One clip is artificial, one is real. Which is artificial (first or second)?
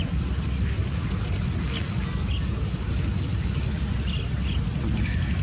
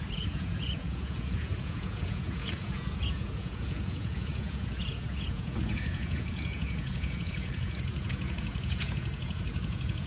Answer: second